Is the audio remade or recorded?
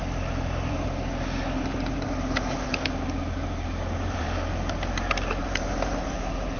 remade